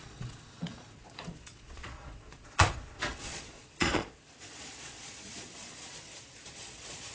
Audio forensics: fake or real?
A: fake